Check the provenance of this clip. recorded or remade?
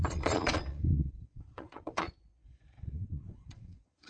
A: remade